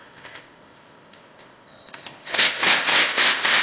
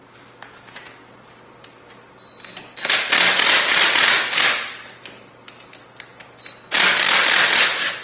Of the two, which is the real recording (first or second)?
second